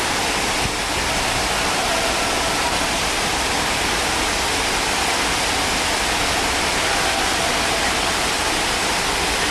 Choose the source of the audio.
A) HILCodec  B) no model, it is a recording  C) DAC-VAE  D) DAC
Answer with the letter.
B